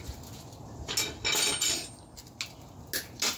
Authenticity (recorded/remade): recorded